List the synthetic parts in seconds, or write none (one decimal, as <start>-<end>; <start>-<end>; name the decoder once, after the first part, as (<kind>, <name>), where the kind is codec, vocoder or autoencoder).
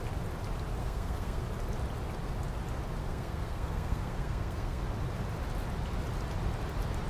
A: 0.8-1.4 (codec, SNAC); 3.0-4.8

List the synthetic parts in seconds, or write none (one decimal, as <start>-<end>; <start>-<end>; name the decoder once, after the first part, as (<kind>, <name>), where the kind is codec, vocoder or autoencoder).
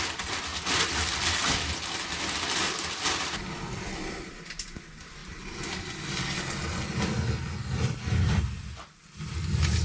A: none